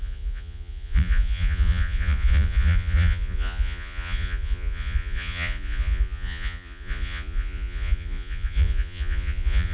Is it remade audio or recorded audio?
remade